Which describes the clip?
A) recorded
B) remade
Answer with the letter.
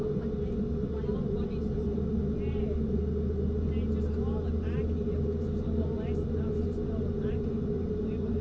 A